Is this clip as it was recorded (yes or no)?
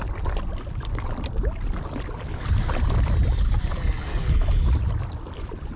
yes